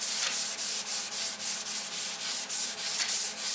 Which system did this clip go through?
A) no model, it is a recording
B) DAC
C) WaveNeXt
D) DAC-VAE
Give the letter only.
A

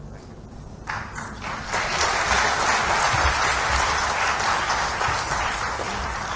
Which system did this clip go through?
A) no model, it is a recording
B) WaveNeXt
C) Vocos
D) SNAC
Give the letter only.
A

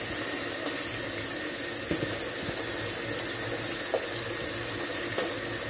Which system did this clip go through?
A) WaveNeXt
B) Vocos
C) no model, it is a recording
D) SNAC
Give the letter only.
C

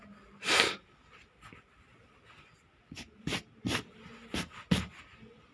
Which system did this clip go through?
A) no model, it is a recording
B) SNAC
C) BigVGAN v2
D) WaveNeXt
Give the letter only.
A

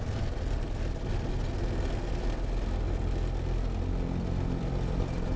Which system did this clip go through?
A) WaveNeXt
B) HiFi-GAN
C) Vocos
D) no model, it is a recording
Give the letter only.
D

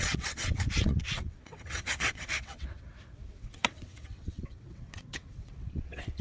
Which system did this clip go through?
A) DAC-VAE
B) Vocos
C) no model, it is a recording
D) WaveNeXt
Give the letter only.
D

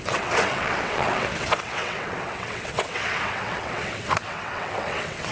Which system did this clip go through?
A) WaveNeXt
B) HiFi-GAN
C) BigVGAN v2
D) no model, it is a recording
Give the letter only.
A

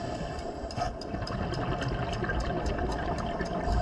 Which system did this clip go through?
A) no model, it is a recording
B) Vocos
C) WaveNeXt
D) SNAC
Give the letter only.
A